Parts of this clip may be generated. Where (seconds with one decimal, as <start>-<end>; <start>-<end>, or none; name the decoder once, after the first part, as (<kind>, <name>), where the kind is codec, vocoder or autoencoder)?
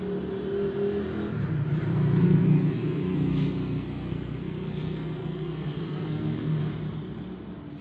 1.9-6.6 (codec, SNAC)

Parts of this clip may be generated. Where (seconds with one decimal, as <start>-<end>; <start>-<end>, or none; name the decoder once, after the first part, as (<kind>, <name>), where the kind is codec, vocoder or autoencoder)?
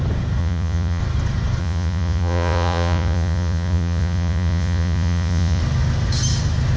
0.4-1.0 (vocoder, Vocos); 1.6-5.6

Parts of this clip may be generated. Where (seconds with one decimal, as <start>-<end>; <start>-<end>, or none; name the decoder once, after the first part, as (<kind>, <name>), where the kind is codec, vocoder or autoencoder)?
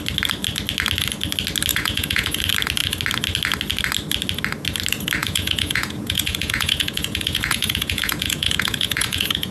1.7-2.4 (vocoder, Vocos); 5.2-9.5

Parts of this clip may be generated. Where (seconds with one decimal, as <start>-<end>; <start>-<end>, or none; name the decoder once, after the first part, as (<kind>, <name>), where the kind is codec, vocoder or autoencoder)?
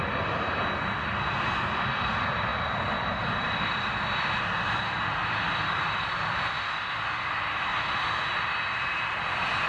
none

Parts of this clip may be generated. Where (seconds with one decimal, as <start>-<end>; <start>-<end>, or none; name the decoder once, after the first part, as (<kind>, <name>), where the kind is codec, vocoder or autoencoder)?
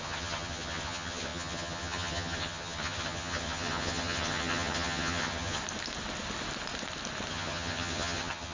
0.0-5.6 (vocoder, HiFi-GAN); 7.3-8.5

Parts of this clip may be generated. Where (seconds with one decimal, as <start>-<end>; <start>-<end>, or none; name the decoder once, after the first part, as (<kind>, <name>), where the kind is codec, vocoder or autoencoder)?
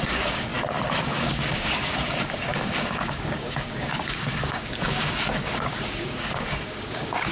0.0-0.5 (codec, DAC); 1.0-7.3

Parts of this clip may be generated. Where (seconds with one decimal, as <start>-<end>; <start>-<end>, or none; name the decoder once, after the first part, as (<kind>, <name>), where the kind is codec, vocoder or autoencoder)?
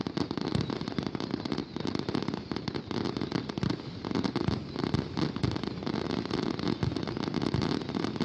none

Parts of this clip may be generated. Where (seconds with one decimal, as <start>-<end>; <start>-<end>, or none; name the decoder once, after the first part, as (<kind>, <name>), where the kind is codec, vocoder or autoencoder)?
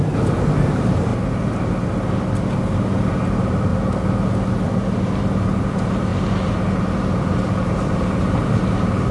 0.0-1.1 (vocoder, BigVGAN v2); 3.2-3.7; 5.2-9.1